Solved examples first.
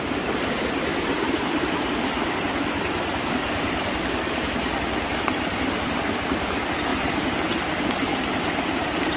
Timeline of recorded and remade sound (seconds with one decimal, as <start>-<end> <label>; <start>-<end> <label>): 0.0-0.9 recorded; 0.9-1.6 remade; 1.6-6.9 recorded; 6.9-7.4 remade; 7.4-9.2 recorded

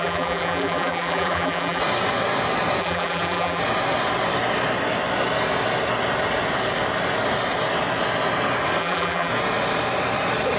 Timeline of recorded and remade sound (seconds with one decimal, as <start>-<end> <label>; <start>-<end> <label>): 0.0-1.8 remade; 1.8-2.8 recorded; 2.8-3.6 remade; 3.6-8.8 recorded; 8.8-9.3 remade; 9.3-10.6 recorded

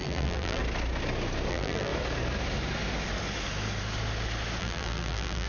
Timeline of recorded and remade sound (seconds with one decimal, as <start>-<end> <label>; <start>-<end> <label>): 0.0-0.6 remade; 0.6-1.5 recorded; 1.5-1.9 remade; 1.9-4.6 recorded; 4.6-5.5 remade